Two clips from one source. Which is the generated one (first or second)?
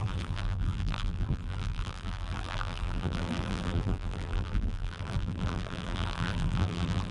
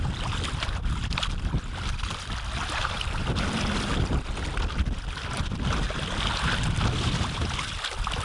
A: first